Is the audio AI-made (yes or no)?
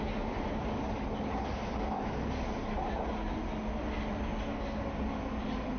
no